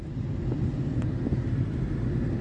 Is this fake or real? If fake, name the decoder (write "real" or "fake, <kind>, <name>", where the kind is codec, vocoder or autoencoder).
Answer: real